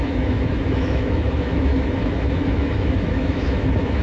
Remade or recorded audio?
remade